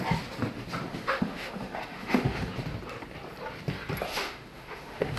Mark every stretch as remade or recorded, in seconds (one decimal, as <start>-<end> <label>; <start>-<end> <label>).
0.0-0.9 recorded; 0.9-2.5 remade; 2.5-4.1 recorded; 4.1-5.2 remade